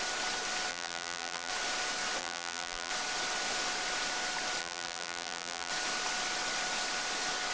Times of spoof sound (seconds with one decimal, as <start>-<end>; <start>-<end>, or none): 0.7-1.5; 2.2-2.9; 4.6-5.7